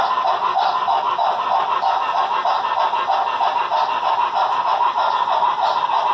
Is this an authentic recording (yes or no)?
yes